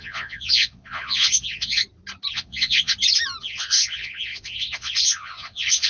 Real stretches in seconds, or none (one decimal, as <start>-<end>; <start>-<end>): 1.8-2.3; 2.9-3.4